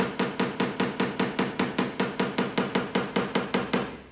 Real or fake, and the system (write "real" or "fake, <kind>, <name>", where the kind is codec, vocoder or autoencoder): real